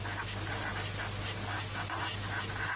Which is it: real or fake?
real